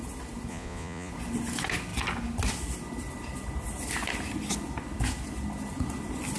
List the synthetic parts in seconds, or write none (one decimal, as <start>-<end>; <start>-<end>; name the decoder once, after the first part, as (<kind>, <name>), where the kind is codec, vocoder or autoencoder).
0.5-1.1 (vocoder, Vocos)